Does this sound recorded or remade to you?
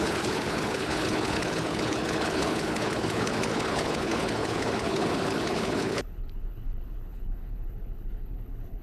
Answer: remade